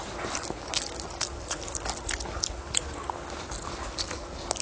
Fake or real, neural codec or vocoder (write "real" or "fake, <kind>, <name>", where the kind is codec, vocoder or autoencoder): real